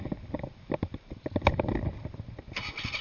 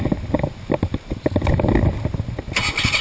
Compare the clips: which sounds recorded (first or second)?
second